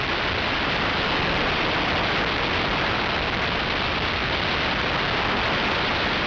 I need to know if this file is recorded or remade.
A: recorded